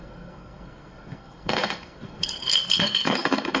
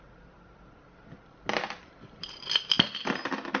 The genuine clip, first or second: second